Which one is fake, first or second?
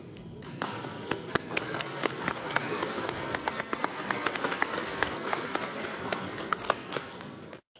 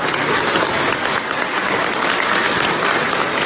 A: first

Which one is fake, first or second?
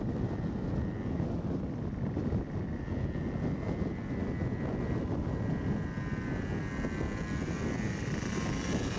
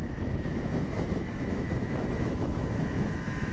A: second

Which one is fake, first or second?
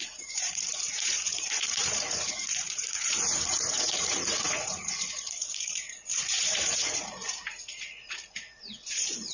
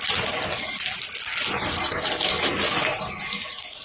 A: first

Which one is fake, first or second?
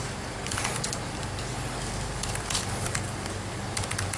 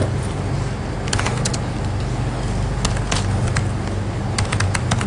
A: first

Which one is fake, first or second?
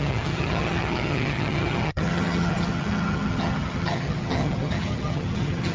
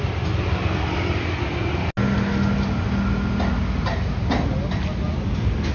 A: first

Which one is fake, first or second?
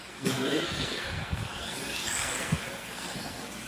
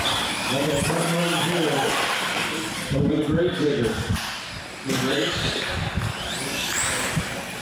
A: first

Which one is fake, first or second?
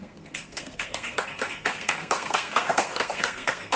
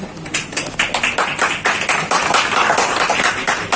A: first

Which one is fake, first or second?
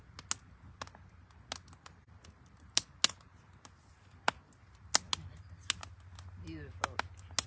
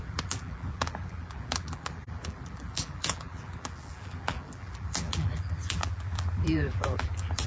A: second